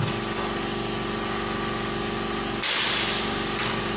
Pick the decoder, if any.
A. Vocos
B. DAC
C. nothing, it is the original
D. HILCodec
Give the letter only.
C